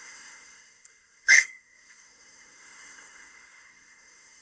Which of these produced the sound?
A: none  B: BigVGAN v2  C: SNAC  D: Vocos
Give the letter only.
C